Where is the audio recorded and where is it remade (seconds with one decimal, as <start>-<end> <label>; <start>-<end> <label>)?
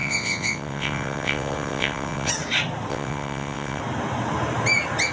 0.0-2.3 remade; 2.3-2.9 recorded; 2.9-3.8 remade; 3.8-5.1 recorded